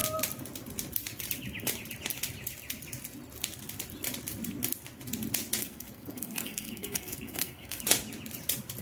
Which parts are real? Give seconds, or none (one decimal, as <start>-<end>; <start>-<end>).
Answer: 0.0-5.6; 7.8-8.8